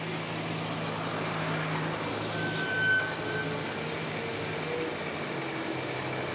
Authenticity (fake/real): real